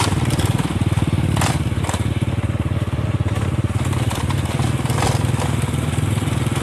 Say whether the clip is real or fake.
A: real